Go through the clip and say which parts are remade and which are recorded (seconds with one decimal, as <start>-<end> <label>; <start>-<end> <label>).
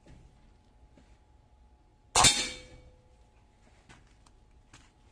0.0-5.1 recorded